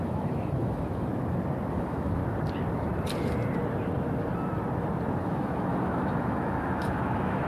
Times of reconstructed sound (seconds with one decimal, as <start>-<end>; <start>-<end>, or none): 0.0-1.1; 1.7-2.2; 5.2-7.5